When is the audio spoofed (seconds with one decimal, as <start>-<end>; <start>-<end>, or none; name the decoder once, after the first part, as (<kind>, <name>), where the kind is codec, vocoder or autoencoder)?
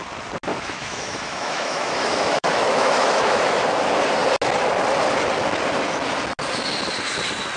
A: 0.5-3.6 (autoencoder, DAC-VAE)